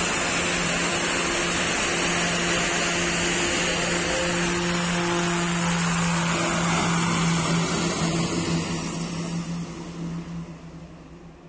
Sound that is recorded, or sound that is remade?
recorded